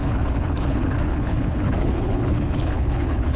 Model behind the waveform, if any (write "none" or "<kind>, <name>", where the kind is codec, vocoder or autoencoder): codec, HILCodec